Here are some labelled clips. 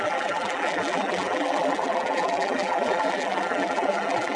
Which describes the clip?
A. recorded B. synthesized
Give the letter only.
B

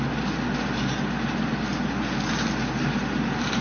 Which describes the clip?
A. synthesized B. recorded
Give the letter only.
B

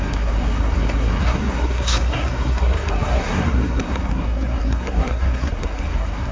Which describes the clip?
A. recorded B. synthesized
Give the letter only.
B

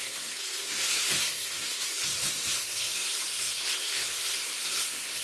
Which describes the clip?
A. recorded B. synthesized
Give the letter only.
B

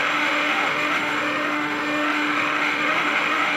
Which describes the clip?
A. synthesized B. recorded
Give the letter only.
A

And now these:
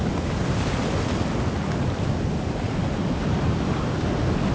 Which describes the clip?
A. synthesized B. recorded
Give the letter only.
B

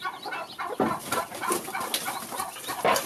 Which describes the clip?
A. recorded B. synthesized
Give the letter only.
B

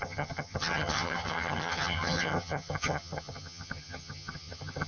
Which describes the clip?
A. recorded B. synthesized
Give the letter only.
B